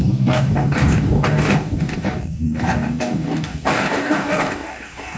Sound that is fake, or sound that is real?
fake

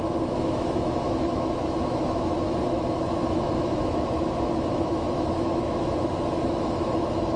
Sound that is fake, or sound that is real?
fake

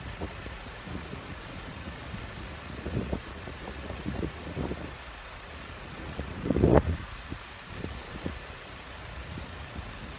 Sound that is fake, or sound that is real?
fake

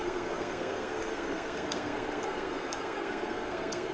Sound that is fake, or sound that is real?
fake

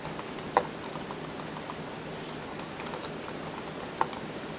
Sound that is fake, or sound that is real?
real